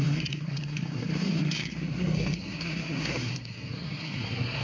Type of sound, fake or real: fake